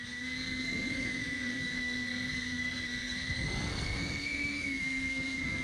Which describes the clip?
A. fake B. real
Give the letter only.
A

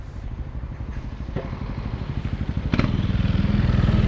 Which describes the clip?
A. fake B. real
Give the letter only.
B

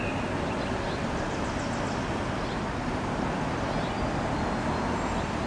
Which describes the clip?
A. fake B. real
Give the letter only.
B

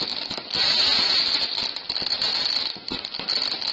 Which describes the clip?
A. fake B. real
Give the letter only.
B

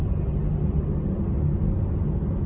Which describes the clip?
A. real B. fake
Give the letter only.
A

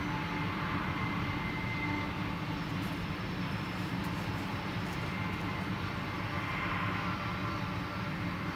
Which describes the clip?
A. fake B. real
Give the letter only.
B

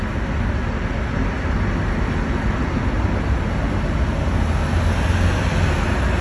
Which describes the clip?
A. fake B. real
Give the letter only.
B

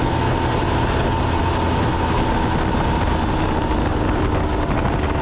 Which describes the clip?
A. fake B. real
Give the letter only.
B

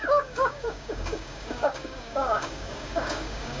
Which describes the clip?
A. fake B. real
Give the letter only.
A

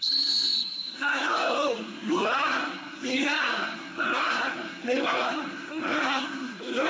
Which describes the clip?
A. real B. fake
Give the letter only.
B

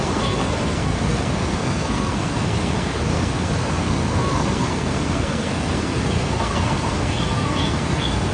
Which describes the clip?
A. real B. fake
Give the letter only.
B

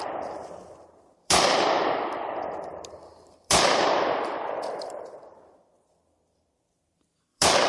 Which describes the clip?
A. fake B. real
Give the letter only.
A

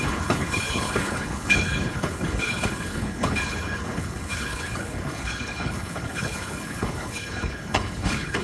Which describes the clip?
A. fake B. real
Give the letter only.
A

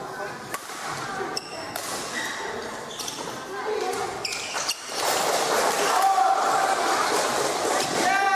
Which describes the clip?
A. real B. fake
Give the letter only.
A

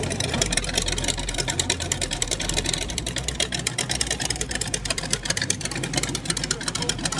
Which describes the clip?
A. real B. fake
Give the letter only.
B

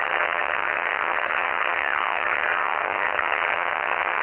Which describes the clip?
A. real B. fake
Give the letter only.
B